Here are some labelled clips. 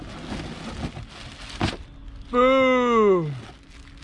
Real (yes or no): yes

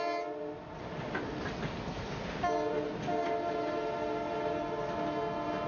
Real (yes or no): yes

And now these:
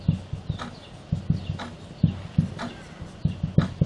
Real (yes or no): yes